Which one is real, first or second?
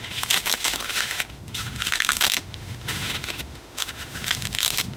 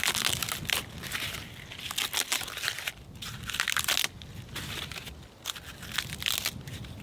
second